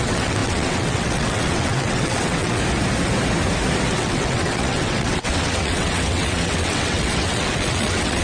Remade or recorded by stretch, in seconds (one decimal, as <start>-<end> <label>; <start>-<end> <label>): 0.0-2.6 remade; 2.6-3.9 recorded; 3.9-8.2 remade